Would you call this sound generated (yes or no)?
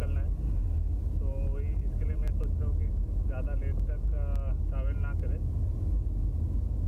no